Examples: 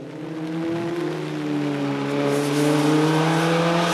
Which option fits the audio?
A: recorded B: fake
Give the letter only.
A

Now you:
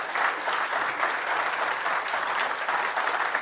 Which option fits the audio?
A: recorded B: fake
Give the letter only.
A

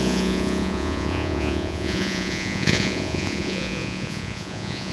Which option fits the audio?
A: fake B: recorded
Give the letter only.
A